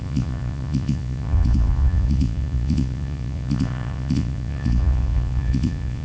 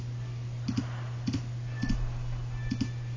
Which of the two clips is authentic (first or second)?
second